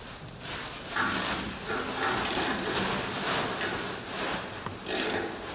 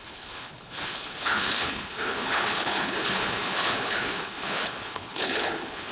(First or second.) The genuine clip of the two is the first